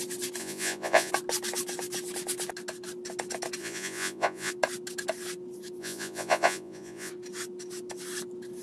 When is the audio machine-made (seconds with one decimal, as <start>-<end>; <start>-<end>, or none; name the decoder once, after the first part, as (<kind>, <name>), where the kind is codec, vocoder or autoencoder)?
0.4-1.1 (vocoder, Vocos); 3.6-4.5; 5.8-7.1